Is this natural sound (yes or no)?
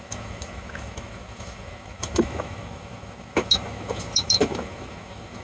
no